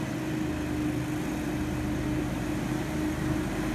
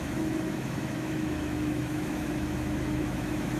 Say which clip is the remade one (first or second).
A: second